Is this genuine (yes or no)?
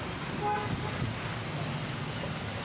yes